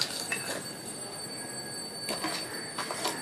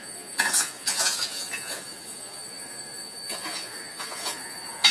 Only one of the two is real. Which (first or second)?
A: first